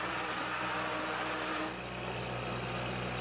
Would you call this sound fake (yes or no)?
no